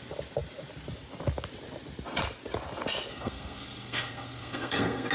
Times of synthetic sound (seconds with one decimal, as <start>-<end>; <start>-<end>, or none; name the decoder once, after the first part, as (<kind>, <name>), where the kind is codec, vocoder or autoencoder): 3.1-5.1 (codec, SNAC)